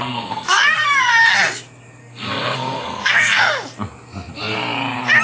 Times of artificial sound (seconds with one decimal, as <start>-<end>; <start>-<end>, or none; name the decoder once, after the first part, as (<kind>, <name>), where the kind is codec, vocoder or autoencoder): 0.0-1.1 (codec, SNAC); 2.0-3.4